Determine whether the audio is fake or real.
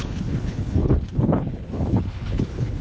fake